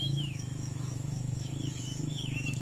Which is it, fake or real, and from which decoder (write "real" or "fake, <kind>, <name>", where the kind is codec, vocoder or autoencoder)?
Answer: fake, autoencoder, DAC-VAE